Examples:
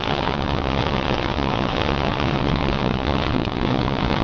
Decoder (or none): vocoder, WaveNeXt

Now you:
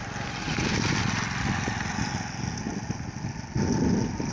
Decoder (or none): none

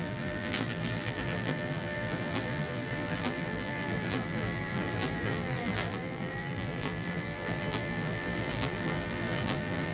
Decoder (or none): vocoder, BigVGAN v2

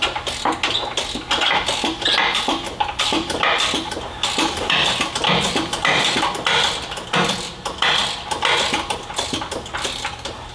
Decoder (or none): none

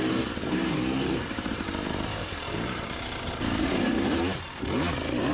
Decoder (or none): vocoder, BigVGAN v2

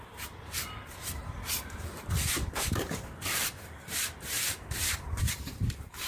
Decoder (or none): vocoder, BigVGAN v2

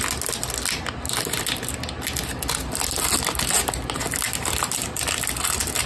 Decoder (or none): none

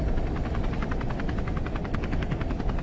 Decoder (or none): none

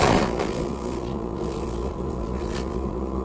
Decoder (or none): vocoder, Vocos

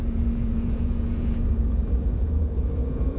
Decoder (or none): vocoder, Vocos